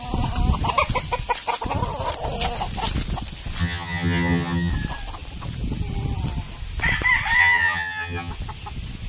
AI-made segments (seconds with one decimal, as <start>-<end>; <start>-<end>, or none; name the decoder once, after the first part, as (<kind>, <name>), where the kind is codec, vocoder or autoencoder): 3.6-4.7 (vocoder, HiFi-GAN); 7.4-8.3